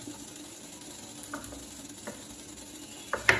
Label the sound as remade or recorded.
recorded